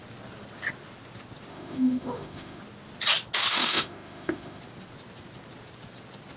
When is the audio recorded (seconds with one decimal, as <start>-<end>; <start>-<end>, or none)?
0.0-1.5; 2.6-3.5; 4.6-6.4